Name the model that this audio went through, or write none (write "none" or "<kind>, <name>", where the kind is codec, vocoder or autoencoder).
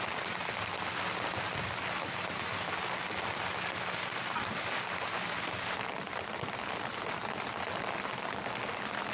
none